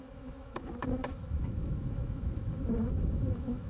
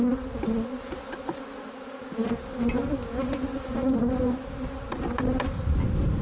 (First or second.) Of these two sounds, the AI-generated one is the first